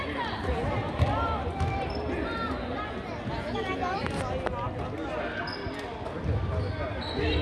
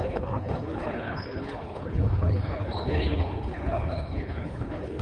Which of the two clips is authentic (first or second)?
first